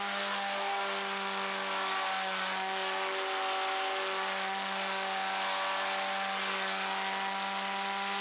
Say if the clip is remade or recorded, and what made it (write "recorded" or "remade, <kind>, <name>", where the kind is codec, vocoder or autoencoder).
recorded